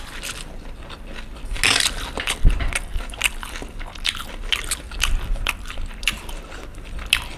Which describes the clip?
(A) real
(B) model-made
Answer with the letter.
A